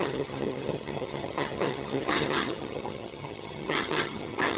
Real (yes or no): no